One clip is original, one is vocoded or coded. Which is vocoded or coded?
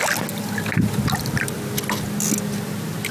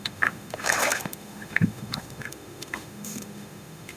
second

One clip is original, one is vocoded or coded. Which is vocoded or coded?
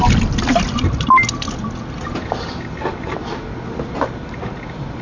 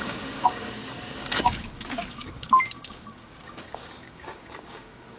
second